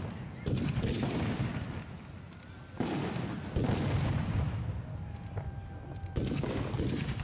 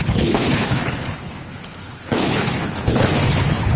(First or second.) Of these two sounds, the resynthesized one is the second